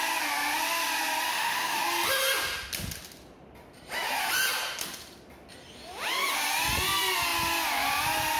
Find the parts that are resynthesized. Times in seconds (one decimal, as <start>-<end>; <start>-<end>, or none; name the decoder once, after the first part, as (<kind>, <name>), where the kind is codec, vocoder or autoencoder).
1.3-1.8 (autoencoder, DAC-VAE)

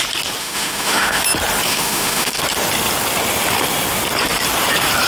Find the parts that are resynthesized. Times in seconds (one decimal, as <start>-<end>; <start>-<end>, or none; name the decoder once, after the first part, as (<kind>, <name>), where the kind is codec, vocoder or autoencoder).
0.4-1.2 (autoencoder, DAC-VAE); 1.7-2.4

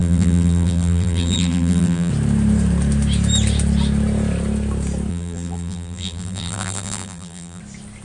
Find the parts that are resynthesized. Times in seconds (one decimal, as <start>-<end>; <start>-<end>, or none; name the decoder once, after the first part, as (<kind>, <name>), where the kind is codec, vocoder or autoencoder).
0.0-2.1 (vocoder, BigVGAN v2); 5.1-7.6

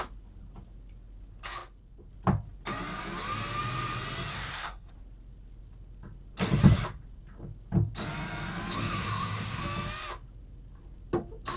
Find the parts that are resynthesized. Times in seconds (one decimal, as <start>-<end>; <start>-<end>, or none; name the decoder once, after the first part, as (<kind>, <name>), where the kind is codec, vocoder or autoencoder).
4.3-4.9 (codec, SNAC); 8.9-9.6

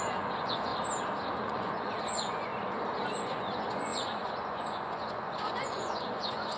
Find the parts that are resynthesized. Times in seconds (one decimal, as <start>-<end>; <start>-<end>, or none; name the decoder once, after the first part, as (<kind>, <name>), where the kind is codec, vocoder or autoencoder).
0.0-0.7 (vocoder, Vocos); 1.3-2.5; 3.2-6.6

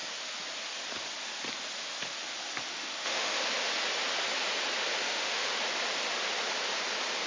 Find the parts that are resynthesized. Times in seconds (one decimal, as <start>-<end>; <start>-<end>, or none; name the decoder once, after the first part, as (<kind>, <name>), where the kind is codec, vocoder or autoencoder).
2.7-3.4 (autoencoder, DAC-VAE); 5.0-5.5